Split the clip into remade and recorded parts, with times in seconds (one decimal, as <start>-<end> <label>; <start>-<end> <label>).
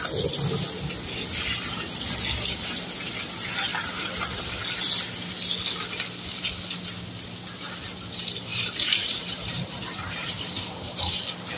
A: 0.0-3.7 recorded; 3.7-4.4 remade; 4.4-8.5 recorded; 8.5-11.1 remade; 11.1-11.6 recorded